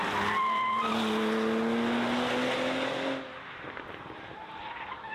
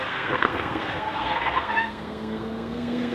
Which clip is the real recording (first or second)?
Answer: first